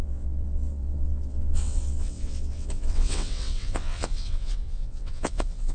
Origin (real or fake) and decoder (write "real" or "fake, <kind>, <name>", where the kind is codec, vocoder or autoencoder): fake, vocoder, WaveNeXt